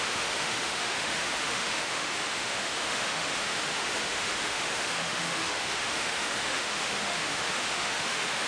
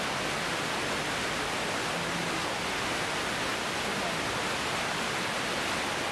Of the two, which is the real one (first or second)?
second